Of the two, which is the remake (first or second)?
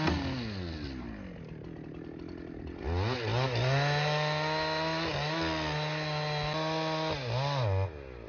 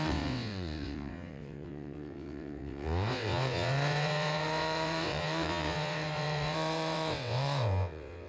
second